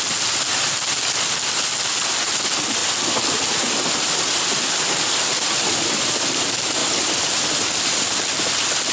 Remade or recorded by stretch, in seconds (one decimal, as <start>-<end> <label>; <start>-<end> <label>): 0.0-2.8 recorded; 2.8-6.1 remade; 6.1-6.8 recorded; 6.8-8.1 remade; 8.1-8.9 recorded